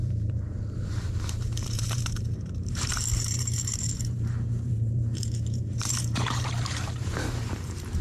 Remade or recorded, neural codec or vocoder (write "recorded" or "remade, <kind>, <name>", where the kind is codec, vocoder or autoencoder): remade, vocoder, BigVGAN v2